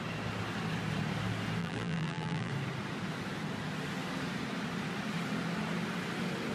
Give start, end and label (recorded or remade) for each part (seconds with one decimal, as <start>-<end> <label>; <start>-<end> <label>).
0.0-1.6 recorded; 1.6-2.5 remade; 2.5-6.5 recorded